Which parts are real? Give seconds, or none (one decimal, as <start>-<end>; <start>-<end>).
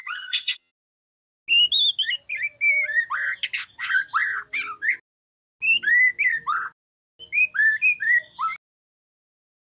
0.7-9.6